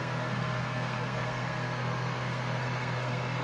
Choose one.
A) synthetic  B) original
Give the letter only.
A